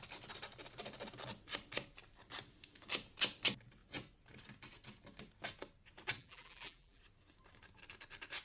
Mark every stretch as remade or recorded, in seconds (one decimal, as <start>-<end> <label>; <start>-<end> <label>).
0.0-6.2 recorded; 6.2-7.0 remade; 7.0-8.4 recorded